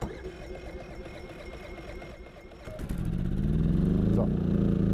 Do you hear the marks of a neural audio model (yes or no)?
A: no